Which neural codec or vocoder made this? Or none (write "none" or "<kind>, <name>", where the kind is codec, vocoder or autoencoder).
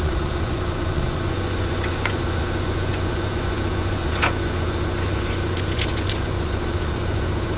vocoder, Vocos